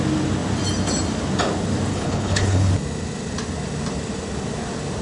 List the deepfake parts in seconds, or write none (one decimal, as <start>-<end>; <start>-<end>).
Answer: 1.9-2.7